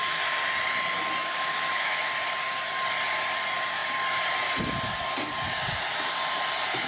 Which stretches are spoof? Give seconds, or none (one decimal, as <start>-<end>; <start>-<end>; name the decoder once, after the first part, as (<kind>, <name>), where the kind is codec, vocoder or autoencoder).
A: 1.2-2.1 (autoencoder, DAC-VAE)